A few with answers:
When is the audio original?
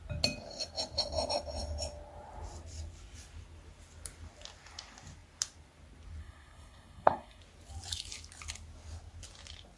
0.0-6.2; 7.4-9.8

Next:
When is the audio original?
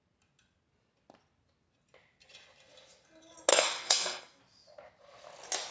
0.0-3.5; 4.4-5.7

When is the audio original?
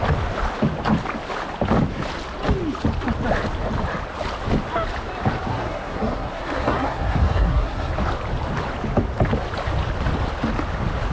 0.0-5.5; 7.9-11.1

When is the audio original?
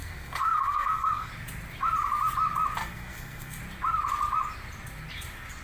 1.3-2.8; 3.6-5.6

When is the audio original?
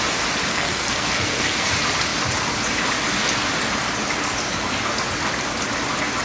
0.0-0.5; 1.7-6.2